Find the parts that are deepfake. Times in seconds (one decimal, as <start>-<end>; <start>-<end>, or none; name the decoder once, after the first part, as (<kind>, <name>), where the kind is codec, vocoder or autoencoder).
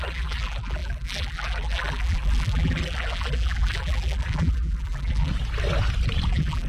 0.0-5.3 (vocoder, BigVGAN v2); 6.3-6.7